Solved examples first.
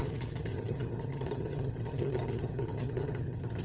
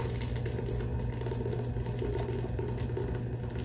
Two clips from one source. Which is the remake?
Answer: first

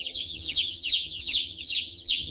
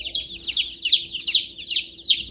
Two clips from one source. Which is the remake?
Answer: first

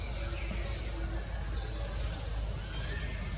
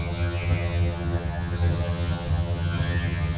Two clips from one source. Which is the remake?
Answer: second